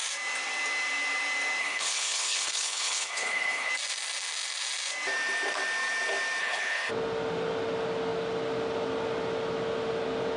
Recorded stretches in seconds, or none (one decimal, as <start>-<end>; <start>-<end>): 0.0-1.6; 3.7-6.4; 6.9-10.4